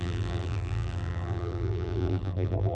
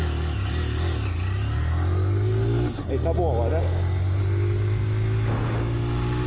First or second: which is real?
second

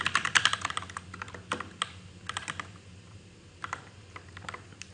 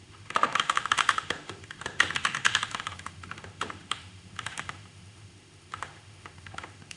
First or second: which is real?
first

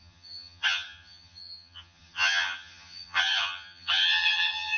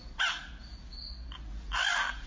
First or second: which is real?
second